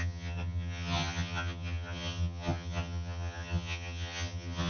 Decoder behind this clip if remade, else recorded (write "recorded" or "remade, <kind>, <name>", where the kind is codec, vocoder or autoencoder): remade, vocoder, HiFi-GAN